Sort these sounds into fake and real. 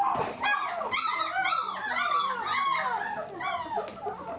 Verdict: real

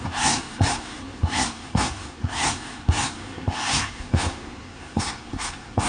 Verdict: fake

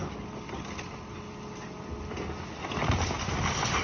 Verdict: real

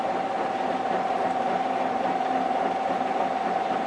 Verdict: real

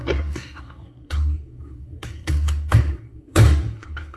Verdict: fake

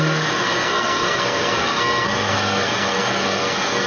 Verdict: fake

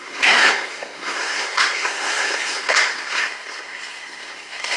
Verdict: fake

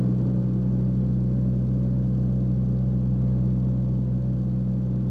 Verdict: real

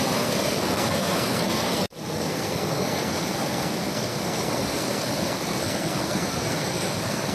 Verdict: fake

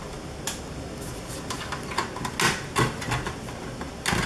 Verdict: real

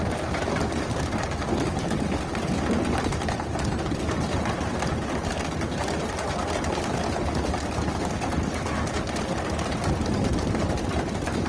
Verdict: real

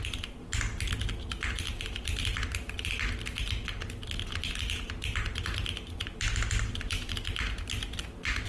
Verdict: real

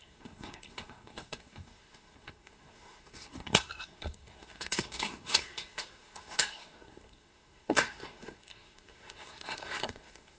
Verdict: fake